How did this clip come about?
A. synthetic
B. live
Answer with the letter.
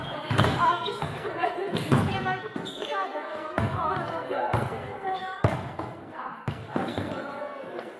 A